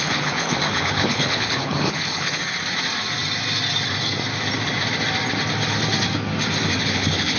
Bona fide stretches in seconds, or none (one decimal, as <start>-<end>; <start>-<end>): 2.4-6.8